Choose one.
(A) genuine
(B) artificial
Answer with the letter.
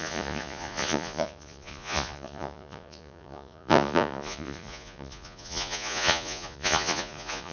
B